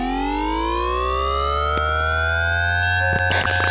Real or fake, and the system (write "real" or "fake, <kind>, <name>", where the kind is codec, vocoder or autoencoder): real